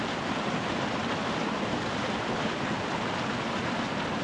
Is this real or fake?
real